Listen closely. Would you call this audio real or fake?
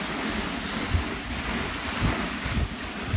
real